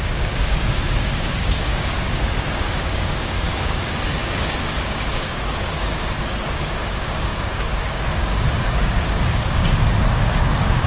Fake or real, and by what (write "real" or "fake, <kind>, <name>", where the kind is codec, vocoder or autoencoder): fake, codec, DAC